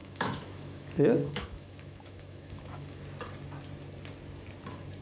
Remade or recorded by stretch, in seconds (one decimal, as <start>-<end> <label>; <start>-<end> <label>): 0.0-3.0 remade; 3.0-5.0 recorded

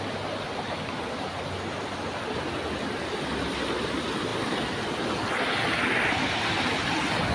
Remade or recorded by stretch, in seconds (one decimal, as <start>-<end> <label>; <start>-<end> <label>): 0.0-7.3 recorded

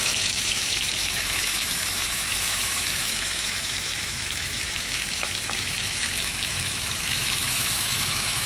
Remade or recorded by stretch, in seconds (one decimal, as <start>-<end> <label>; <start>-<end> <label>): 0.0-8.5 remade

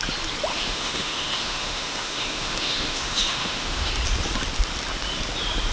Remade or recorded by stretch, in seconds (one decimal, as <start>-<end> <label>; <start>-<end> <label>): 0.0-0.5 recorded; 0.5-3.9 remade; 3.9-5.7 recorded

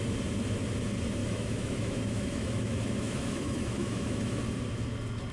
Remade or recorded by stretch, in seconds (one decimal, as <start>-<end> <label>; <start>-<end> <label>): 0.0-1.2 recorded; 1.2-4.4 remade; 4.4-5.3 recorded

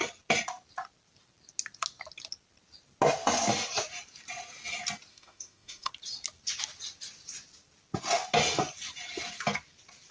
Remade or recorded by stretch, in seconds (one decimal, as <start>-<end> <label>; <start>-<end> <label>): 0.0-5.1 recorded; 5.1-5.9 remade; 5.9-10.1 recorded